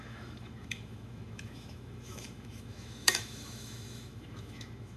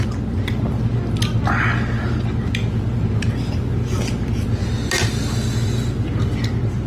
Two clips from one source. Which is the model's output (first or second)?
first